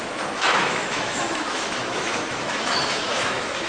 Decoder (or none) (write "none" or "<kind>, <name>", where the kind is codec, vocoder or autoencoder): autoencoder, DAC-VAE